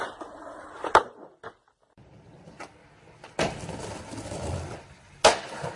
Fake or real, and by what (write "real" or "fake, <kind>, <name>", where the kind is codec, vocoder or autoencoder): real